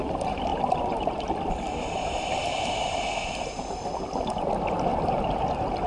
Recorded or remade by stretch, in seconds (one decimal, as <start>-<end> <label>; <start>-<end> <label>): 0.0-0.5 recorded; 0.5-1.3 remade; 1.3-4.9 recorded; 4.9-5.9 remade